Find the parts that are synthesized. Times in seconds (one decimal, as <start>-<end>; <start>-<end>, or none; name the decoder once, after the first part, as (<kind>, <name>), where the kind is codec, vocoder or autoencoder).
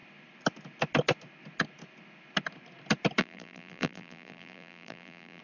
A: 3.2-5.4 (vocoder, BigVGAN v2)